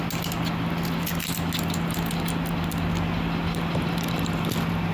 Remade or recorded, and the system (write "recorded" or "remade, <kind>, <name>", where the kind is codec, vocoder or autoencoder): recorded